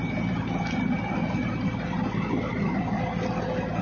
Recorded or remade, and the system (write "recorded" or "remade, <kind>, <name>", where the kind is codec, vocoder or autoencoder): recorded